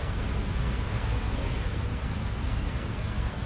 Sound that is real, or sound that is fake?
fake